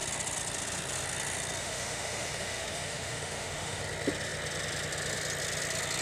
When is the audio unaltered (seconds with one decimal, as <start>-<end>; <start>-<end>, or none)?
0.0-1.6; 3.8-6.0